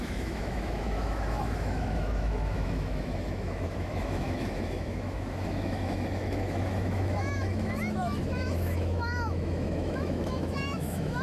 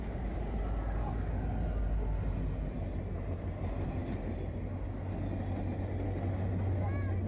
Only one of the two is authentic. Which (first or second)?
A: second